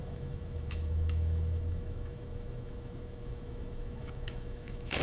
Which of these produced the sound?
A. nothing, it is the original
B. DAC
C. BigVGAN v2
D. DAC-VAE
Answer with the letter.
D